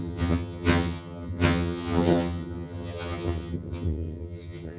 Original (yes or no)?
no